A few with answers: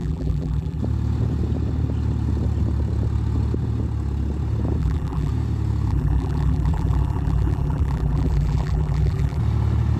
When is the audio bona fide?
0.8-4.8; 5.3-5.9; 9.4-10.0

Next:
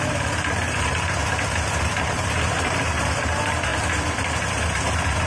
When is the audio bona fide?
1.2-2.0; 3.7-4.5

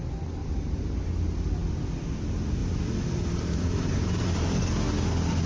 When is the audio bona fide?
0.0-0.4; 1.0-2.6; 4.6-5.5

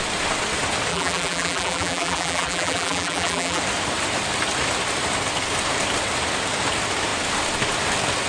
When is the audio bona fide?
0.0-0.9; 3.6-8.3

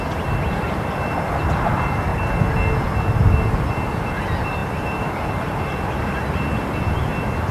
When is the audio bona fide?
2.1-3.5

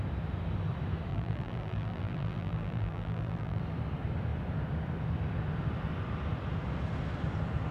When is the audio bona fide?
0.0-1.1; 3.6-7.7